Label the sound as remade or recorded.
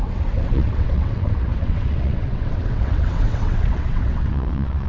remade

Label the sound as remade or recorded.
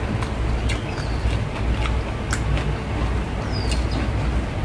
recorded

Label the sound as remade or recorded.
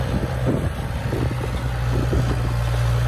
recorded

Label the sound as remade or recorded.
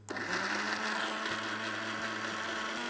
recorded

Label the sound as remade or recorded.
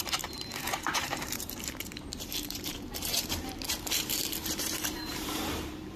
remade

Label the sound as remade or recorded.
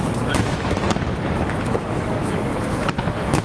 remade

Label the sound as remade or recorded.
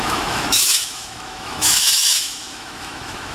remade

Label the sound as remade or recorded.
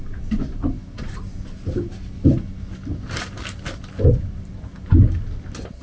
recorded